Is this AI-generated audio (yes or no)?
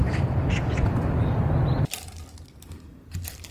no